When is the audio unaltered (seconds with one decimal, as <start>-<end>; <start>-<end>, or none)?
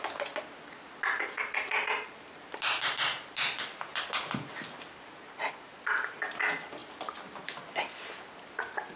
0.0-9.0